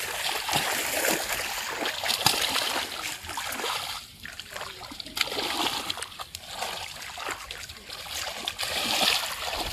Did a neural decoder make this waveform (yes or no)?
no